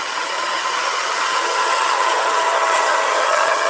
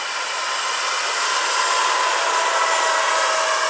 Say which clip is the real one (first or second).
second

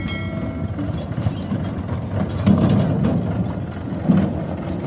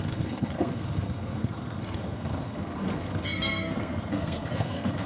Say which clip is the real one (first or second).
first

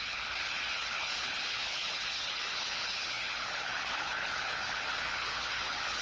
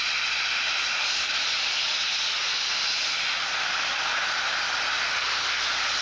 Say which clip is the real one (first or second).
second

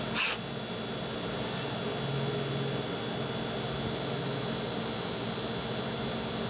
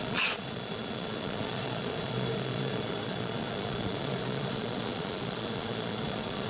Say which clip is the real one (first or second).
first